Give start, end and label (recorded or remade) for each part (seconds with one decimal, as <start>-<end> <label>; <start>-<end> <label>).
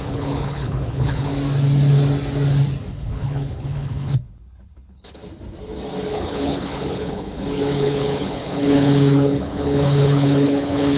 0.0-1.3 remade; 1.3-2.9 recorded; 2.9-5.2 remade; 5.2-6.1 recorded; 6.1-11.0 remade